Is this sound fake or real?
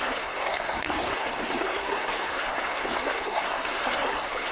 fake